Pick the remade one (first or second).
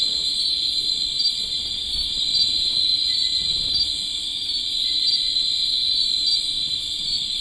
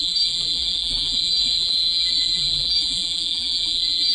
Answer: second